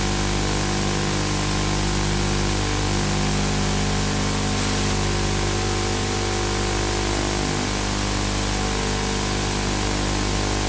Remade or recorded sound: recorded